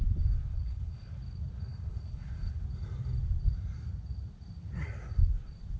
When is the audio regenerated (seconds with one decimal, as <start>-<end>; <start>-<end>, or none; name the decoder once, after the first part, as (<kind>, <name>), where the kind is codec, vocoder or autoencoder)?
0.5-1.2 (codec, HILCodec); 1.7-2.6